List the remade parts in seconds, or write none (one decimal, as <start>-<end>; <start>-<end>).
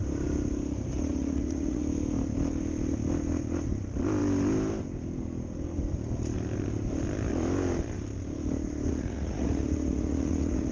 1.1-1.8; 8.9-10.7